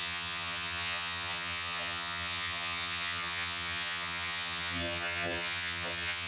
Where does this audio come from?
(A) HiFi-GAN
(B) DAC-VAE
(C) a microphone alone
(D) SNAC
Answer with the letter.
A